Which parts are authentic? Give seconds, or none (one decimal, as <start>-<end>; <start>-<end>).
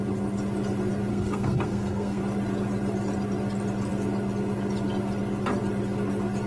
0.0-1.1; 2.2-6.5